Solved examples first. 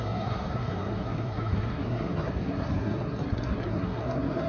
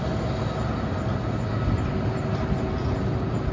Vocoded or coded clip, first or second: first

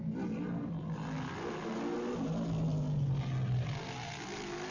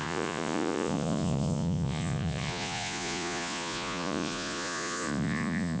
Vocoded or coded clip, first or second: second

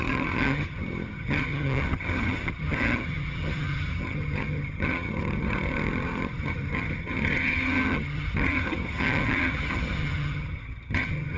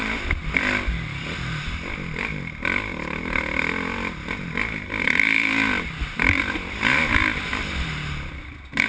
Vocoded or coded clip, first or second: first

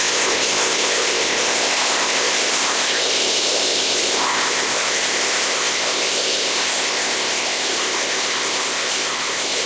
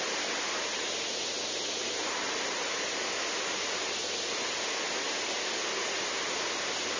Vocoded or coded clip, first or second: first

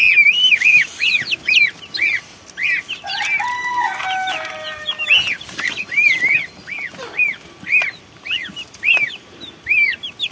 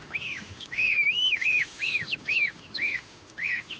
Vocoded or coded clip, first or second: second